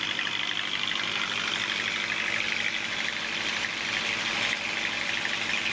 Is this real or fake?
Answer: real